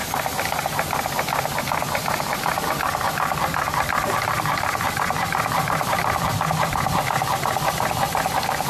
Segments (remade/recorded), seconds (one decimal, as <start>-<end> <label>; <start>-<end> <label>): 0.0-1.8 recorded; 1.8-8.7 remade